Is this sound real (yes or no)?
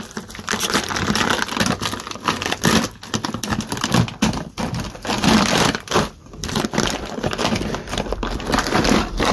no